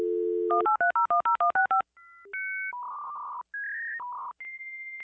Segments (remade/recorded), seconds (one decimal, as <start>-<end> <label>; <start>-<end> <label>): 0.0-5.0 recorded